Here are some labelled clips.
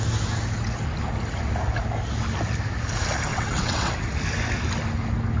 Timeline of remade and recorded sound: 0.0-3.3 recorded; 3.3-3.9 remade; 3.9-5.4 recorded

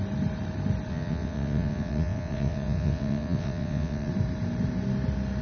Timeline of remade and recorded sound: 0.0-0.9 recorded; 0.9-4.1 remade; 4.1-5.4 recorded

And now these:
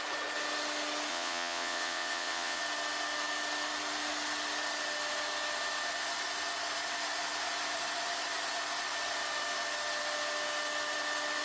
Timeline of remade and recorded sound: 0.0-1.1 recorded; 1.1-2.6 remade; 2.6-11.4 recorded

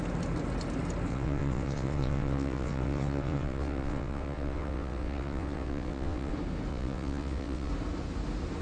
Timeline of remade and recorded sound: 0.0-1.1 recorded; 1.1-6.3 remade; 6.3-6.7 recorded; 6.7-7.7 remade; 7.7-8.6 recorded

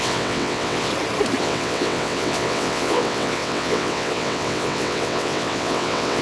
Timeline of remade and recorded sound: 0.0-0.9 remade; 0.9-1.4 recorded; 1.4-6.2 remade

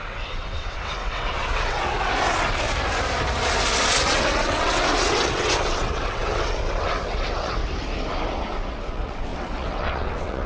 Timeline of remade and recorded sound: 0.0-2.1 remade; 2.1-4.1 recorded; 4.1-7.6 remade; 7.6-8.8 recorded; 8.8-10.5 remade